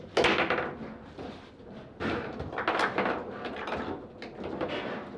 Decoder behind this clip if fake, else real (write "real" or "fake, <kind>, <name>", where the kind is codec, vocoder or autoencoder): real